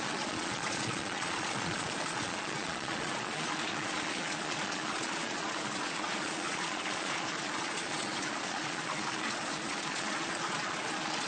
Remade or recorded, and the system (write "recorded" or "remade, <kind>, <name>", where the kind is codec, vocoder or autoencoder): remade, vocoder, Vocos